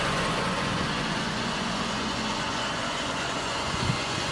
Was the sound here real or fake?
fake